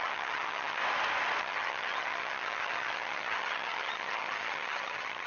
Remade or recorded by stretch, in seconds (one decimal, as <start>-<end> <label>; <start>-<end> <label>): 0.0-0.8 remade; 0.8-1.4 recorded; 1.4-5.3 remade